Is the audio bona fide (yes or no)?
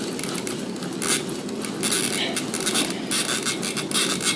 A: yes